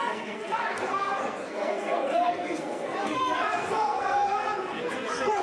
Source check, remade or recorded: remade